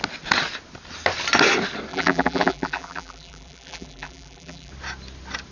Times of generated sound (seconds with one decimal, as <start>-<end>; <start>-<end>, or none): 1.9-4.7